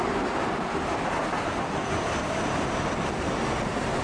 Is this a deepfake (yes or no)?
no